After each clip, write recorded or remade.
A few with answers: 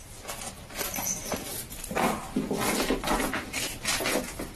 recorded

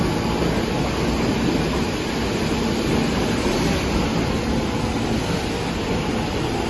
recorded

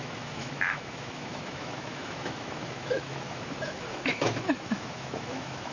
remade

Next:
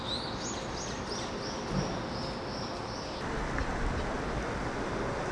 recorded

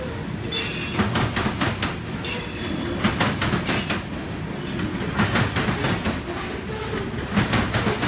recorded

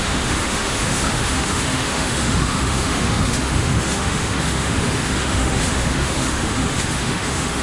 remade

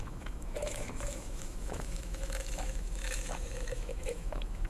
remade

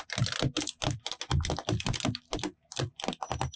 recorded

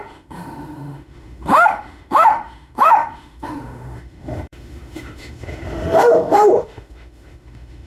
remade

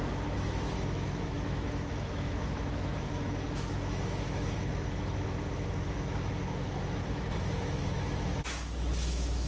remade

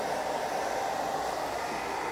recorded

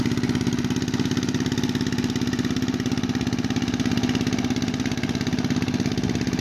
recorded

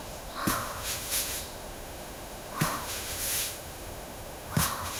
remade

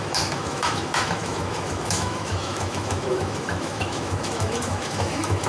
remade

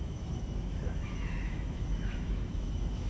remade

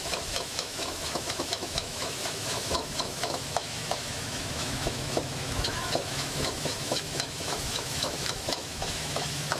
remade